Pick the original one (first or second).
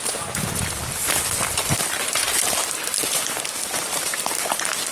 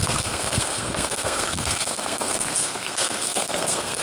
first